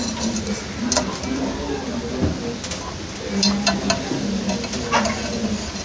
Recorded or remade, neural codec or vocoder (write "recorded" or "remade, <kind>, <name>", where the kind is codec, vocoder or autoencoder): recorded